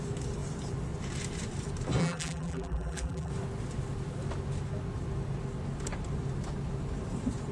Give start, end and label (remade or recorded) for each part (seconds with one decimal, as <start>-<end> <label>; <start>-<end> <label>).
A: 0.0-2.0 recorded; 2.0-3.3 remade; 3.3-7.5 recorded